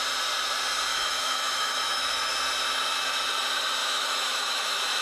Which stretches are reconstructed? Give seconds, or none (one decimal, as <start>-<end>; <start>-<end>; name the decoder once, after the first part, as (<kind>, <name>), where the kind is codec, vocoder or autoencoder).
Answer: 0.9-2.3 (autoencoder, DAC-VAE); 3.8-5.0

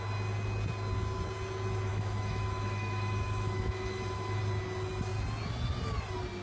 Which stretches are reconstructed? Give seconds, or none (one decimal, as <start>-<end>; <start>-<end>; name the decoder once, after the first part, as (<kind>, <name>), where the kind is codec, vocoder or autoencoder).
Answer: 1.9-4.4 (autoencoder, DAC-VAE)

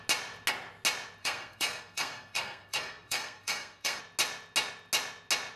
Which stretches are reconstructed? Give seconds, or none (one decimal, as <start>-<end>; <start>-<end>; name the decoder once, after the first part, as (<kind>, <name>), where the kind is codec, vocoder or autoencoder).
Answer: 1.2-4.0 (codec, SNAC)

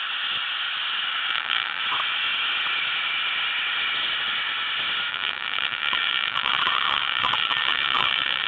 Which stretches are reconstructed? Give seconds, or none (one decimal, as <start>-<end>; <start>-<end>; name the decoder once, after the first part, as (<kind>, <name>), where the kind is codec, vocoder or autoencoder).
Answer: 1.3-1.8 (vocoder, WaveNeXt); 5.1-8.5

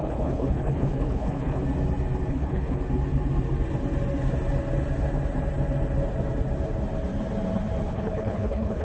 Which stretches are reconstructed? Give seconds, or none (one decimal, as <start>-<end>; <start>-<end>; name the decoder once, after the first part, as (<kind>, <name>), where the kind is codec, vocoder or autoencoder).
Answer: 0.0-1.6 (codec, HILCodec); 2.3-2.8; 7.8-8.8

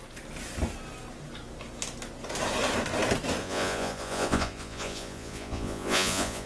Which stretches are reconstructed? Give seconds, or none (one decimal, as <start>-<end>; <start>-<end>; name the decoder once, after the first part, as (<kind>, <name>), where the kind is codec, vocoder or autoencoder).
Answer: 3.4-6.5 (vocoder, Vocos)